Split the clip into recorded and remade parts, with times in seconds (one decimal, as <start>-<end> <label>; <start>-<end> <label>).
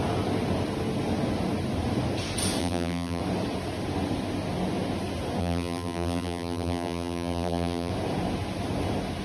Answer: 0.0-2.6 recorded; 2.6-3.2 remade; 3.2-5.4 recorded; 5.4-7.9 remade; 7.9-9.2 recorded